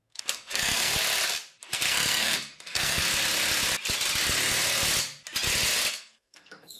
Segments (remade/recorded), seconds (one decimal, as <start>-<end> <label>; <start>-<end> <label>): 0.0-0.9 remade; 0.9-1.6 recorded; 1.6-3.0 remade; 3.0-5.9 recorded; 5.9-6.8 remade